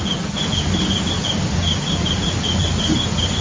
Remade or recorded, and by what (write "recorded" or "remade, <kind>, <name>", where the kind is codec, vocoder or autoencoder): recorded